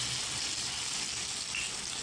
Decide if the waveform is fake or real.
real